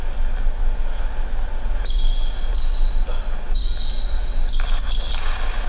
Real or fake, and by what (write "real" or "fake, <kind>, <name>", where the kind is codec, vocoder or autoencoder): real